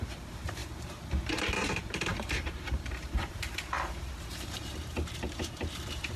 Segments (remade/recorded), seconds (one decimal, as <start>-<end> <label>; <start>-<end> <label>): 0.0-0.6 remade; 0.6-1.3 recorded; 1.3-6.2 remade